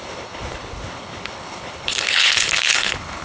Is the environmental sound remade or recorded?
remade